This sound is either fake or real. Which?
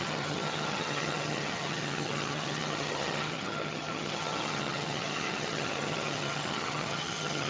fake